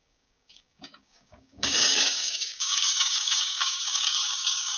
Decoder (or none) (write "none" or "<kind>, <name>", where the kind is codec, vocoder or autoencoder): codec, DAC